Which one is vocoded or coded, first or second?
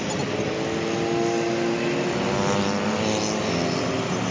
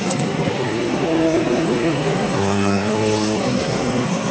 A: second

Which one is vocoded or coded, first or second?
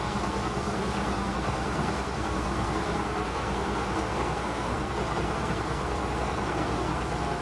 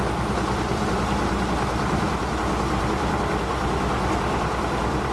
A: first